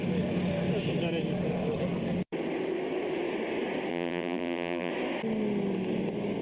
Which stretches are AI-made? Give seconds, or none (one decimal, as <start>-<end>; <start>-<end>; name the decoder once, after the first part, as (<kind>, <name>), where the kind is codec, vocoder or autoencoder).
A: 3.9-4.9 (vocoder, BigVGAN v2)